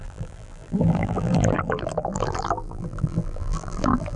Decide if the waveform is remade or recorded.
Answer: remade